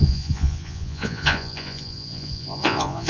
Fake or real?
fake